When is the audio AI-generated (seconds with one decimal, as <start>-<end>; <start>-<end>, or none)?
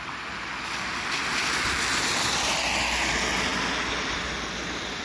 none